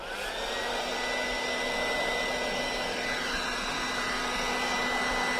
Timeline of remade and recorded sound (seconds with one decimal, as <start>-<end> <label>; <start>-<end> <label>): 0.0-5.4 recorded